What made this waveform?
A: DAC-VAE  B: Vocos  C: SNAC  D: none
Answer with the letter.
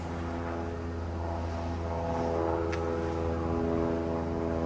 D